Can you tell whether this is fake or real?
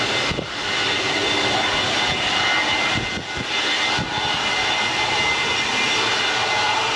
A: real